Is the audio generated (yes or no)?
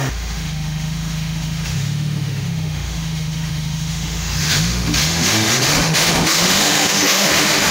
yes